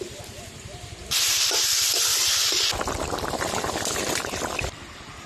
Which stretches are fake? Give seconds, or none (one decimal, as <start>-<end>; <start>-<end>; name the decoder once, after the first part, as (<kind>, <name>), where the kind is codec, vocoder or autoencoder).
0.0-2.1 (vocoder, BigVGAN v2); 3.7-5.3